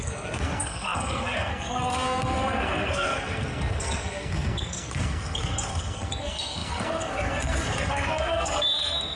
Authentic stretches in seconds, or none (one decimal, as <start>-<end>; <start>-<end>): none